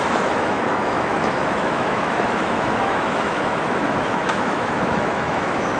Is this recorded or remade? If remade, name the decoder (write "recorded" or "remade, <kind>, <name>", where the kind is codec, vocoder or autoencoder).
remade, autoencoder, DAC-VAE